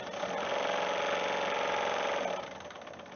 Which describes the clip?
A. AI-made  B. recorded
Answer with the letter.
B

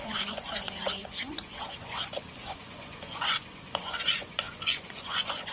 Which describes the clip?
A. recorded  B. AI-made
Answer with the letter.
B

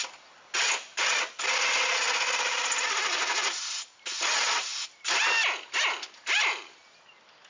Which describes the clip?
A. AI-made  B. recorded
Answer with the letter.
B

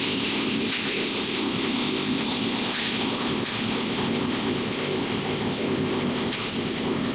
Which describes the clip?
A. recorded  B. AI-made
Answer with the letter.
B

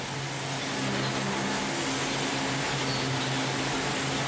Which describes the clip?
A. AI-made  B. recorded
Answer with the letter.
B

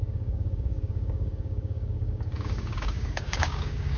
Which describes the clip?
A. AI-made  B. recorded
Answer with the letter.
A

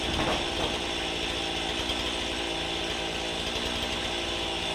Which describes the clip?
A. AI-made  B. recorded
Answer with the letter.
B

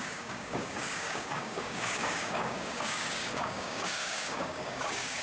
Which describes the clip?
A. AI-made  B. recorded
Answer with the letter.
A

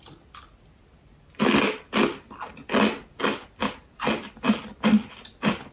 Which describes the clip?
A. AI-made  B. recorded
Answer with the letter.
B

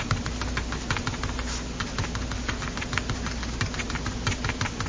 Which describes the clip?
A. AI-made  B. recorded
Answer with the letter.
B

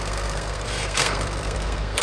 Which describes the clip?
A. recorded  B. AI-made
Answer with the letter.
B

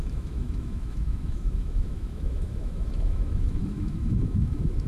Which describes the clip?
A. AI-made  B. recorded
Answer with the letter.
A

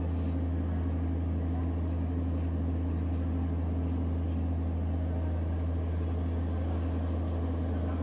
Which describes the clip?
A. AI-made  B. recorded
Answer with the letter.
B